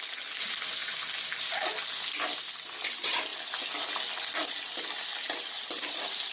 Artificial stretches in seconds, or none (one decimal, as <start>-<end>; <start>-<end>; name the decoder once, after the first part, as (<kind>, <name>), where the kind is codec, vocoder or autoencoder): none